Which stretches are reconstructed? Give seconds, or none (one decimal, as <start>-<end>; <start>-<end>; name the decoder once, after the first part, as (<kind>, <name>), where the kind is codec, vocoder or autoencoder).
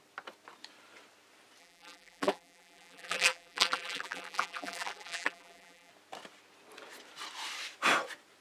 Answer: 1.6-5.9 (vocoder, BigVGAN v2)